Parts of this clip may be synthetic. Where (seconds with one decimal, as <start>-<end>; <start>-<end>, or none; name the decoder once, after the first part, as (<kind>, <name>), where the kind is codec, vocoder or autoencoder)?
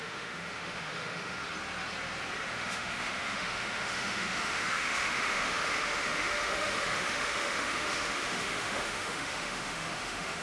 0.0-1.4 (autoencoder, DAC-VAE); 2.5-10.4